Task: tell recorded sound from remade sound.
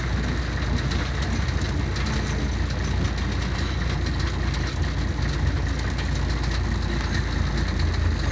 recorded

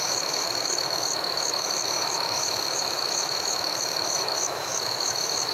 remade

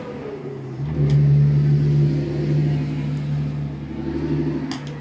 recorded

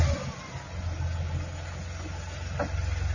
recorded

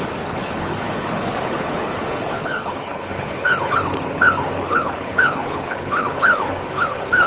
remade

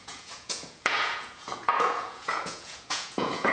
remade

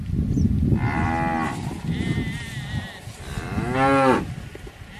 recorded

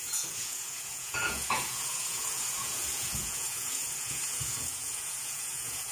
remade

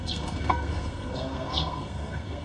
remade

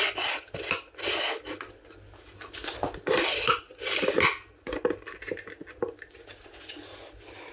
recorded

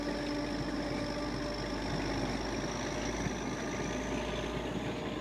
recorded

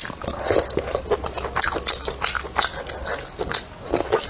recorded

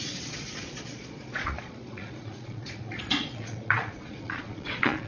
remade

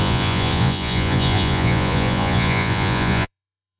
remade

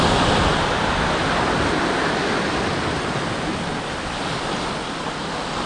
recorded